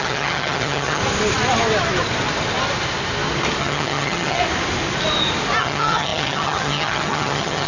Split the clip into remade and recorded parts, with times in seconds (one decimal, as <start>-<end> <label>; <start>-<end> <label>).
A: 0.0-1.0 remade; 1.0-3.6 recorded; 3.6-4.4 remade; 4.4-5.6 recorded; 5.6-7.7 remade